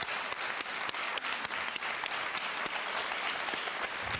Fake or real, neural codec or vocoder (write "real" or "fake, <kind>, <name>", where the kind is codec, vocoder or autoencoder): real